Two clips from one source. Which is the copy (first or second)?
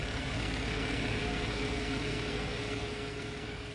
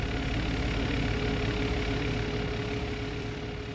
first